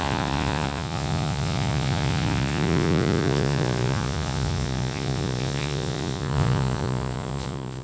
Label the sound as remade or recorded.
remade